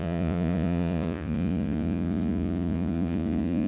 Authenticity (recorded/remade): remade